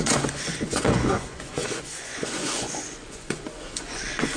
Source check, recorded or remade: remade